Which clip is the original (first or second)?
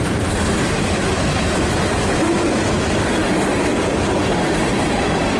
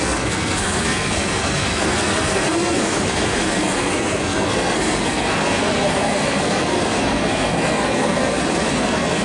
first